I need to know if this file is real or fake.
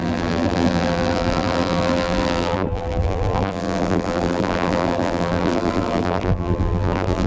fake